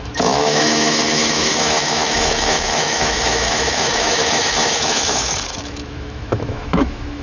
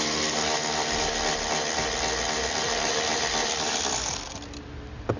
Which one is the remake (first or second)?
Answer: first